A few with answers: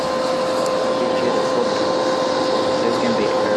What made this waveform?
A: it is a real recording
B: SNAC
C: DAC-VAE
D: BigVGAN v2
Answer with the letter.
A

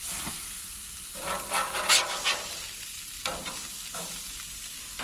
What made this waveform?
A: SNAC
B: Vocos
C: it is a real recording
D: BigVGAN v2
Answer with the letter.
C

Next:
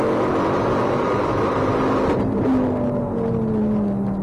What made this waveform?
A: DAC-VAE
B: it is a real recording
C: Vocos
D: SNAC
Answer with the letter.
B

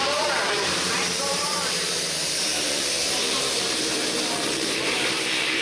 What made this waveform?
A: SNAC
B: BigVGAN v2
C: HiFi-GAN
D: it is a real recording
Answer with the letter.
B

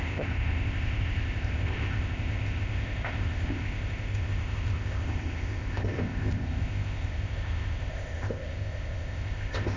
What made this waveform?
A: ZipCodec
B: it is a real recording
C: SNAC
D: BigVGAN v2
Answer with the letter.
A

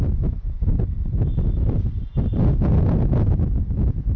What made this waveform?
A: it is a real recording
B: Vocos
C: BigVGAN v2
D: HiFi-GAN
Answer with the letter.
A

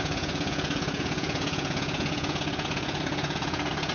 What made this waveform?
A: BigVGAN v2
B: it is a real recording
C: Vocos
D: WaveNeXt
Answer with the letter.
C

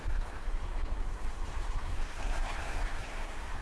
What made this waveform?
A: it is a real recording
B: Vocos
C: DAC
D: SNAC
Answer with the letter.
D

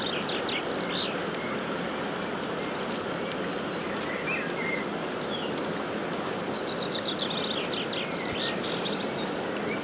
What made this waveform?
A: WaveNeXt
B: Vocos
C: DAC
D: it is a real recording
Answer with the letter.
D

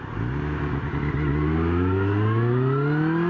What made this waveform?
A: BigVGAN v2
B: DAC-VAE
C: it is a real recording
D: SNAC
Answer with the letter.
C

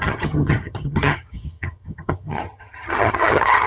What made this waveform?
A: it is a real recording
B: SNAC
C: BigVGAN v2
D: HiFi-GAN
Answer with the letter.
D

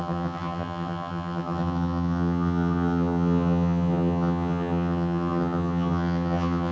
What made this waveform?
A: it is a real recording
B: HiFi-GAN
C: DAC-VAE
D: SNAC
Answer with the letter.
B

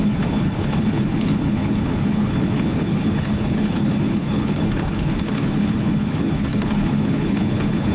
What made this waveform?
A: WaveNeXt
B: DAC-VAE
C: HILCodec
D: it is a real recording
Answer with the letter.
C